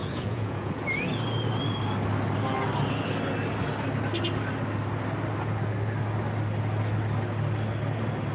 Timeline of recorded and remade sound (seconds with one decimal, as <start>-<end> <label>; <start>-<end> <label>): 0.0-0.7 remade; 0.7-8.3 recorded